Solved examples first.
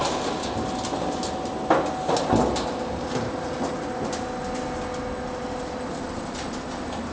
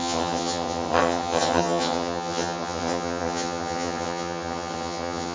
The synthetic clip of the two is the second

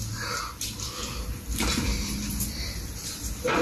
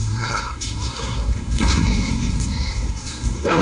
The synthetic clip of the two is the second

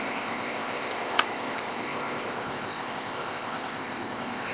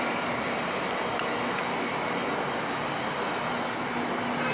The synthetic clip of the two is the first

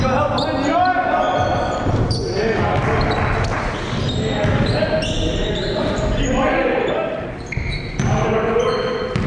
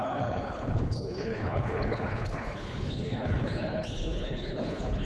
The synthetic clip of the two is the second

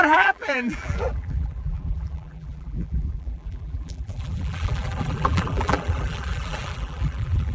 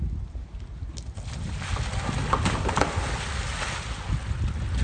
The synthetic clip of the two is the first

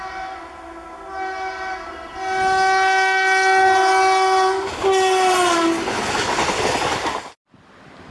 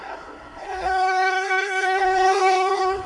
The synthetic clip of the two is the second